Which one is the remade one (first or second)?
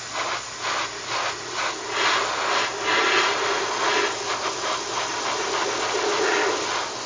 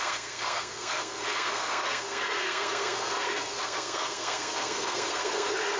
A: second